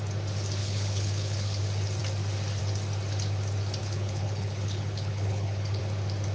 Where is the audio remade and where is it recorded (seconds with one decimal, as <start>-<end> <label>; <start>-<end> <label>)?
0.0-0.6 recorded; 0.6-1.6 remade; 1.6-3.8 recorded; 3.8-5.8 remade; 5.8-6.3 recorded